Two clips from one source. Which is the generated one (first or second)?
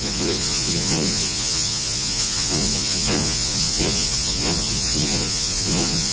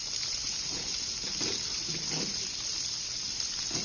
first